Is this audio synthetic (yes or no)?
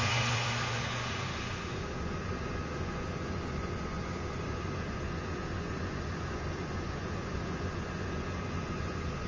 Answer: yes